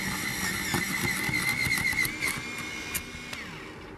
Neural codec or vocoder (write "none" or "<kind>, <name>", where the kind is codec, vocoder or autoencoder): none